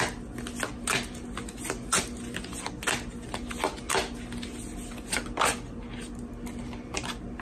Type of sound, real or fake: real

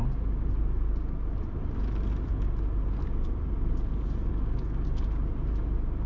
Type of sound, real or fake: real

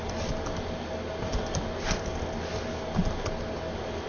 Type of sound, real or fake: real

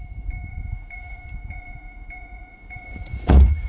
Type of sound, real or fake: fake